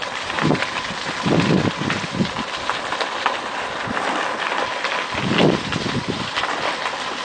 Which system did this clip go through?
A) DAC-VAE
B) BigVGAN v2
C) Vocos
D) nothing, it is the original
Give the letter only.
B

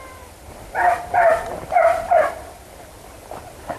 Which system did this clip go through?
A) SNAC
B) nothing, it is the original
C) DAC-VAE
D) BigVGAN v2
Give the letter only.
D